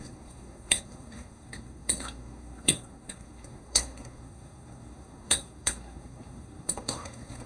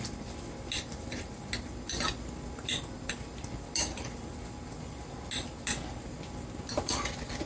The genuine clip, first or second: second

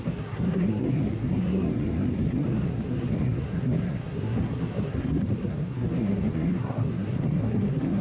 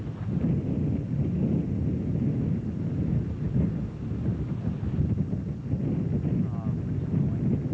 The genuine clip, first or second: second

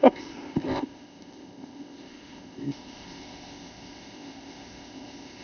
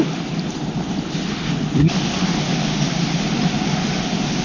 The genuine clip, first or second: second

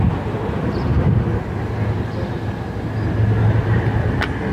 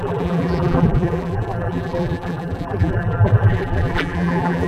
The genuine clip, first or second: first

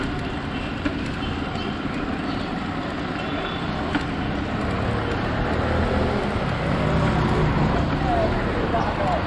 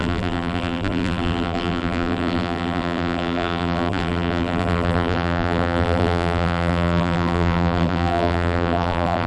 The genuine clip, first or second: first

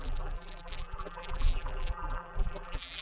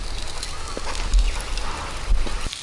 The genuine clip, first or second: second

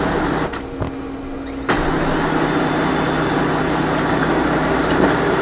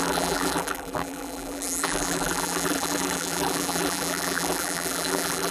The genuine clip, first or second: first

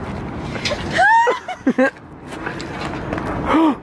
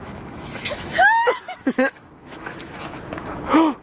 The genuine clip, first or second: first